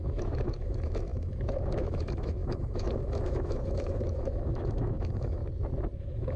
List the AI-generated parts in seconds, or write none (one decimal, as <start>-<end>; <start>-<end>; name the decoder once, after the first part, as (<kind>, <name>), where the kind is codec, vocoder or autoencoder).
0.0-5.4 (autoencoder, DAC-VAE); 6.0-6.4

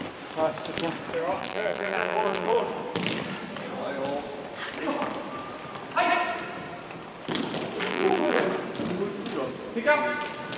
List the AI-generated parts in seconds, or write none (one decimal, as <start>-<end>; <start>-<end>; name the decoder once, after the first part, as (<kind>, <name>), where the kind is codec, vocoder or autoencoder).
1.4-2.6 (vocoder, BigVGAN v2); 7.9-8.4

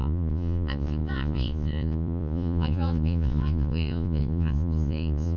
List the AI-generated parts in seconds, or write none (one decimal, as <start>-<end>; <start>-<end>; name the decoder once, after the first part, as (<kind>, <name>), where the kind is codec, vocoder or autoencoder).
0.0-5.4 (vocoder, Vocos)

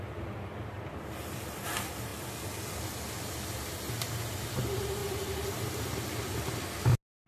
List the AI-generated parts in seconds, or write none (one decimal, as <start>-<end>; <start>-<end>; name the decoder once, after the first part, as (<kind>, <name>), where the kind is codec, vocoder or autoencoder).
none

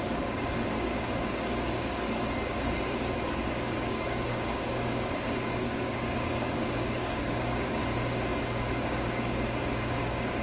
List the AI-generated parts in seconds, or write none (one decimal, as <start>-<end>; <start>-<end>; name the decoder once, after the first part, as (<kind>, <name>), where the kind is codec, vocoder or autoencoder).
0.0-7.8 (codec, DAC); 8.4-10.4

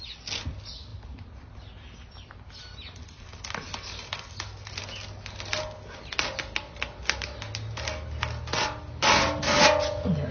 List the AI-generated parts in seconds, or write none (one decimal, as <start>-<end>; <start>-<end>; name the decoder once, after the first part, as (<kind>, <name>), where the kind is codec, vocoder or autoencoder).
none

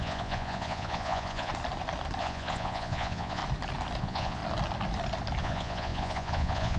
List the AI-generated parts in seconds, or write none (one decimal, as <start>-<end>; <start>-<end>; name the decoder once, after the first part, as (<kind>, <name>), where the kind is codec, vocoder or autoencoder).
0.0-1.5 (vocoder, Vocos); 2.2-3.4; 4.0-4.4; 5.4-6.8

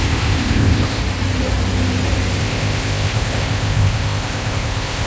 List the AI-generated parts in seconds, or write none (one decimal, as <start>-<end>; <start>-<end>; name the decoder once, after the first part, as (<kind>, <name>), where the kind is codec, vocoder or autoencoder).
0.0-1.0 (codec, ZipCodec); 2.4-5.1